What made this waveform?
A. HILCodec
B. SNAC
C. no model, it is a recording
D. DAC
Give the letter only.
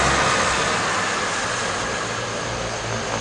C